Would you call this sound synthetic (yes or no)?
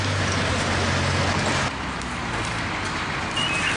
no